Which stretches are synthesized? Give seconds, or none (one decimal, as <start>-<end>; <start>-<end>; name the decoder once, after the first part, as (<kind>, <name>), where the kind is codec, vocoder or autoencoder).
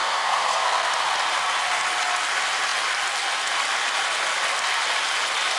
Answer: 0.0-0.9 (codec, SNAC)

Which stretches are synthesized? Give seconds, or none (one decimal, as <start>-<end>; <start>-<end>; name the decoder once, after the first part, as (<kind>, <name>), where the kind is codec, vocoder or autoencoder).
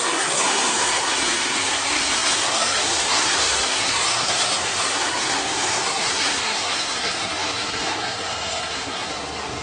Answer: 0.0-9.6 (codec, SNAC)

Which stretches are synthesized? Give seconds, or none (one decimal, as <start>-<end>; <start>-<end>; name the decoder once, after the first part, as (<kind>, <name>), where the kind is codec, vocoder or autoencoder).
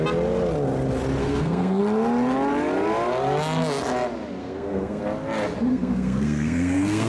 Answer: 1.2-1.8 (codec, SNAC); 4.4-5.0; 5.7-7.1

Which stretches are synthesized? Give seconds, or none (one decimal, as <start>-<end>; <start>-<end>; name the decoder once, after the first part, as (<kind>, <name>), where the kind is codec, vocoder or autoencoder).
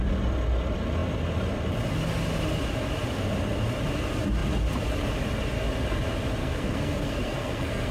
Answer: 6.4-7.9 (codec, SNAC)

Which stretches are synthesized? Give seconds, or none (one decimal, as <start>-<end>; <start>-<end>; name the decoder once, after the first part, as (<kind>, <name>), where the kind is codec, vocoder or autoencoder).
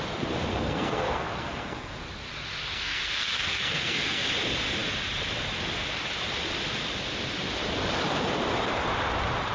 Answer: 0.5-1.9 (codec, SNAC); 2.6-4.3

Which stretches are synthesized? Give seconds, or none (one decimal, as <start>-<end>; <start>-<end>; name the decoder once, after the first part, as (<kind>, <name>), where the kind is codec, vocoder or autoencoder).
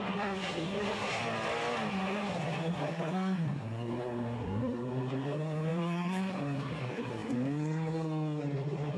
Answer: 0.0-1.2 (codec, SNAC); 1.9-9.0